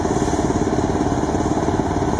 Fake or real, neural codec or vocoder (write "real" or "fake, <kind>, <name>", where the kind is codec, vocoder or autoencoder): real